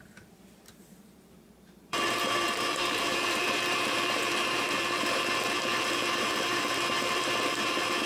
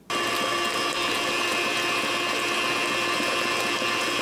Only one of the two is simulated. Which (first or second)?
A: first